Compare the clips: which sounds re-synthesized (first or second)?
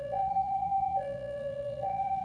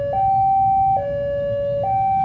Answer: first